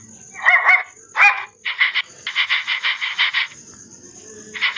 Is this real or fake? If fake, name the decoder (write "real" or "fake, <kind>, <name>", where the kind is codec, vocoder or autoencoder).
real